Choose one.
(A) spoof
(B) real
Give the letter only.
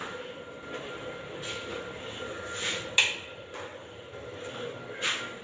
B